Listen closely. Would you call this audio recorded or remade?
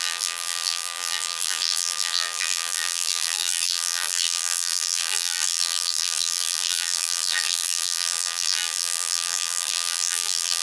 remade